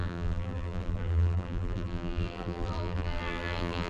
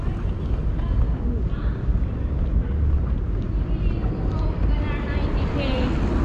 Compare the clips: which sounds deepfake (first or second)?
first